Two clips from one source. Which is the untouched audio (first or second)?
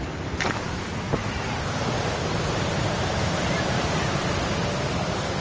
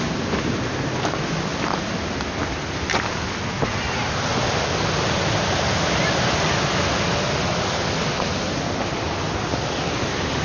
second